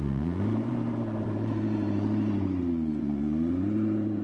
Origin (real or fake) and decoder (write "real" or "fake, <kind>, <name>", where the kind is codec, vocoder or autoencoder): fake, vocoder, Vocos